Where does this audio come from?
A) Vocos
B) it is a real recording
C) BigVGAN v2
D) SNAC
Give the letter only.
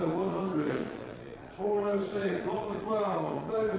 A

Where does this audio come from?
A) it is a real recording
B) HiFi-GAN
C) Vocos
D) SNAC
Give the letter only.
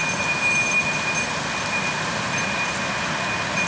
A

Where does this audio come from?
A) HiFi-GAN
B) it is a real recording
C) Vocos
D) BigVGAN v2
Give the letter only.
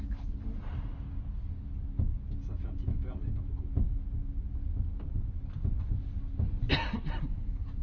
B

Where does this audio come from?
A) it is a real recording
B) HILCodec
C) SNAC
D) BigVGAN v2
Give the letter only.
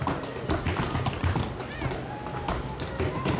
A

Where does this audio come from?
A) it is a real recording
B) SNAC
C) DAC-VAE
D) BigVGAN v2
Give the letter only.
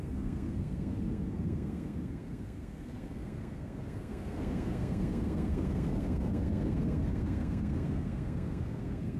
B